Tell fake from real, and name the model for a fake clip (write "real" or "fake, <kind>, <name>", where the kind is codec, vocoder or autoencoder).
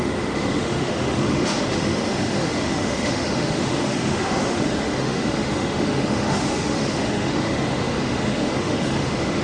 fake, autoencoder, DAC-VAE